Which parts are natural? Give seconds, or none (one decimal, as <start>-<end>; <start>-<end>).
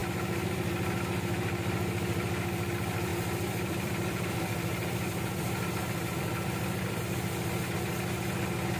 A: 0.0-3.1; 7.0-8.8